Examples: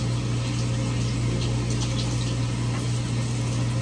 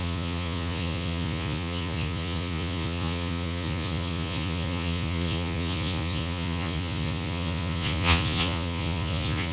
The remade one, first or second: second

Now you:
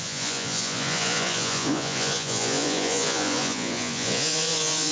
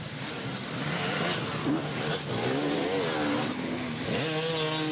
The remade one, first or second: first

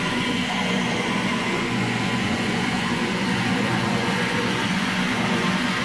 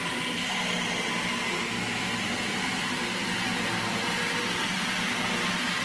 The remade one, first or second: first